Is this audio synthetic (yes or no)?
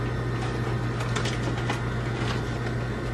no